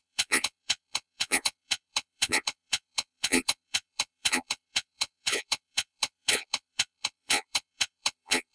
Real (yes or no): no